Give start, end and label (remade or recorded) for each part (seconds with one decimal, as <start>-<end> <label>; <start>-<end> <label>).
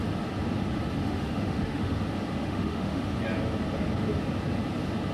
0.0-1.0 recorded; 1.0-2.0 remade; 2.0-2.4 recorded; 2.4-3.1 remade; 3.1-5.1 recorded